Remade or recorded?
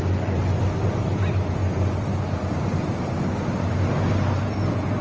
recorded